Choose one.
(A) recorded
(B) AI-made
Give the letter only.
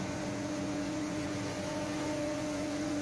B